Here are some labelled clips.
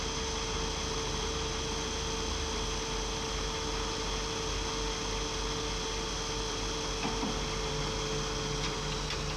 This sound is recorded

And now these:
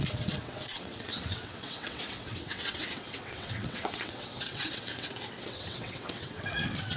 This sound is remade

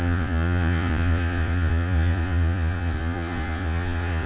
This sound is remade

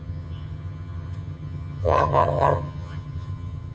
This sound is remade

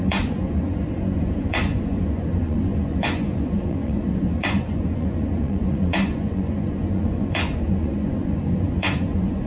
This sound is remade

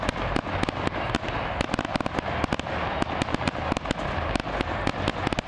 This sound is recorded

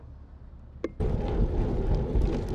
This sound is recorded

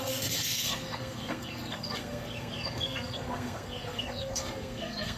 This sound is remade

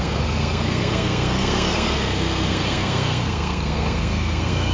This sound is remade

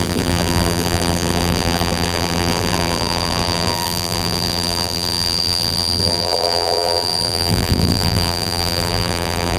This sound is remade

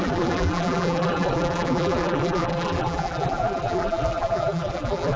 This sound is remade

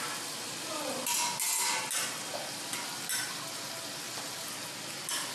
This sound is recorded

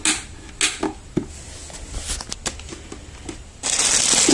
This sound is recorded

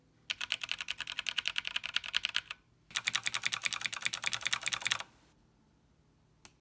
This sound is recorded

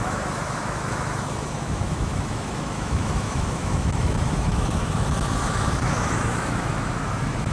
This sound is remade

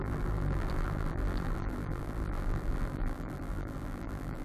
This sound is remade